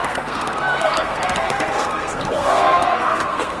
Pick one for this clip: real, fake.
fake